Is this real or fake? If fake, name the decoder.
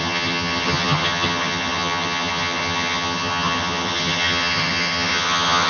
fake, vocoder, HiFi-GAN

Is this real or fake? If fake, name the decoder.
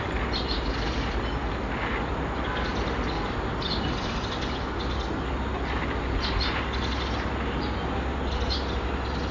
real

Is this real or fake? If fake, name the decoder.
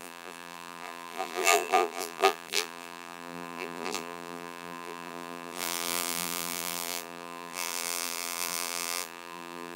fake, vocoder, BigVGAN v2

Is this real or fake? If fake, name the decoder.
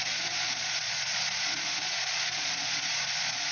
fake, vocoder, Vocos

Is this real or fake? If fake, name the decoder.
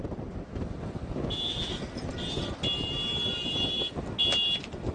real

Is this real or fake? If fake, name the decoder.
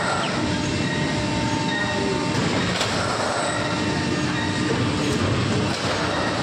real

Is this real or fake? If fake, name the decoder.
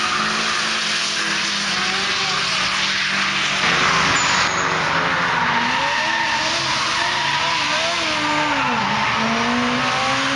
real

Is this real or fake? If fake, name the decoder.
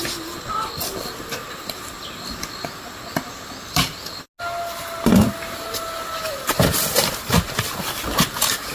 real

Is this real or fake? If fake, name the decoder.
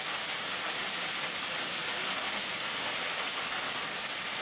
real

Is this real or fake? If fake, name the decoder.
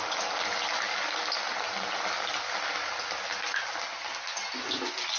real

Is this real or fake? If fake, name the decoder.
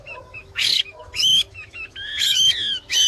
fake, autoencoder, DAC-VAE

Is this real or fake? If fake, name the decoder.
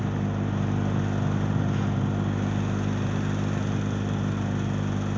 real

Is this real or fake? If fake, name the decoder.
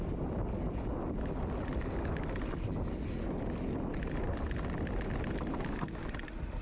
real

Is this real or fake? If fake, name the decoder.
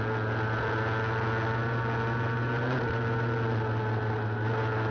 real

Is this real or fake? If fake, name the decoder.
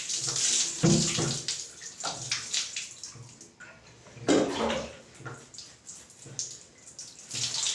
real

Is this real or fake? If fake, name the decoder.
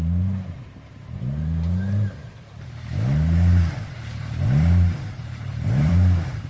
fake, vocoder, BigVGAN v2